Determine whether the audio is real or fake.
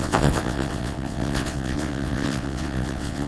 fake